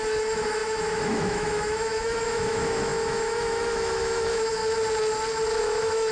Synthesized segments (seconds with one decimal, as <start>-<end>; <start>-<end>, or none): 0.0-4.6; 5.6-6.1